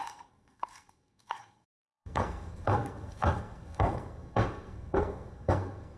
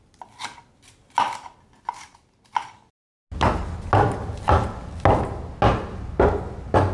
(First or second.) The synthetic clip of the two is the first